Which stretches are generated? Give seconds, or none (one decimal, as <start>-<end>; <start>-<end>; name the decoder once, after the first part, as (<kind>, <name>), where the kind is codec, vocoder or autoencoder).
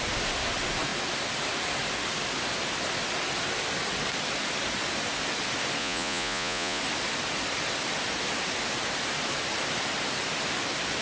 5.8-6.8 (vocoder, Vocos)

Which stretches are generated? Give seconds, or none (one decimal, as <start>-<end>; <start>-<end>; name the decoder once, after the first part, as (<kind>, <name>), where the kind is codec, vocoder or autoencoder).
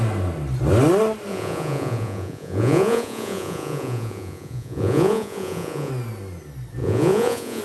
1.3-5.9 (vocoder, Vocos); 6.8-7.6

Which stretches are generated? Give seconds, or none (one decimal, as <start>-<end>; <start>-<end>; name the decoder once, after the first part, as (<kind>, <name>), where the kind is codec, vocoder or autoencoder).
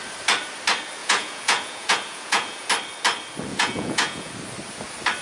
1.0-2.7 (vocoder, Vocos); 3.5-4.3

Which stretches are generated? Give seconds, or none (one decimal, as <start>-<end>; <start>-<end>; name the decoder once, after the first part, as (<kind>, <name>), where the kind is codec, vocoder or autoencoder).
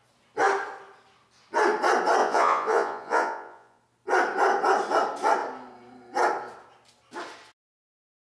2.2-3.8 (vocoder, Vocos)